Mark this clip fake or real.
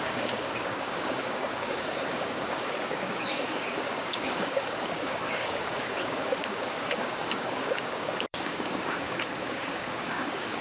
fake